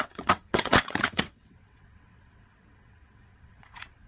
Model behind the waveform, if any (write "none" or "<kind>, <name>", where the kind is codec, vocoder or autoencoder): vocoder, WaveNeXt